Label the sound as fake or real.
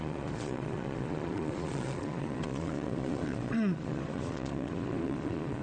fake